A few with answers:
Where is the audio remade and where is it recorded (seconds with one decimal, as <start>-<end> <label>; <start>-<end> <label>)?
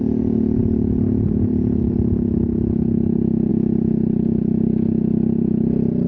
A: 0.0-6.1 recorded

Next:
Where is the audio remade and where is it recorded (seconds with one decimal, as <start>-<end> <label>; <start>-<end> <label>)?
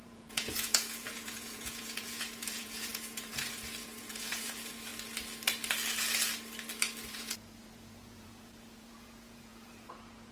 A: 0.0-4.9 remade; 4.9-7.1 recorded; 7.1-10.3 remade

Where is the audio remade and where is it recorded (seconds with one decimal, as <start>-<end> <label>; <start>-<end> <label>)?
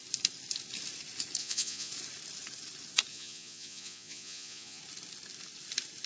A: 0.0-1.4 recorded; 1.4-1.9 remade; 1.9-3.1 recorded; 3.1-4.8 remade; 4.8-6.1 recorded